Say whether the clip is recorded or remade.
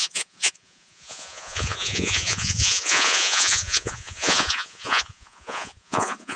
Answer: remade